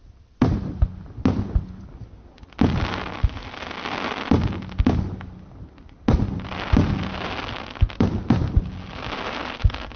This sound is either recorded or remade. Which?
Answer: recorded